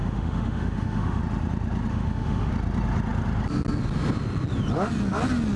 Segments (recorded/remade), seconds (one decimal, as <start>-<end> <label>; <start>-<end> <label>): 0.0-1.2 remade; 1.2-1.9 recorded; 1.9-2.5 remade; 2.5-5.6 recorded